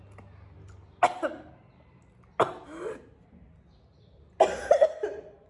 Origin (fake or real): real